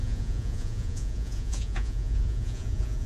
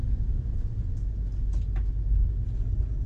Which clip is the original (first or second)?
second